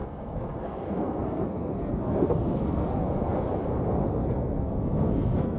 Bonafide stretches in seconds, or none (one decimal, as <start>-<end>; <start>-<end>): 3.4-4.2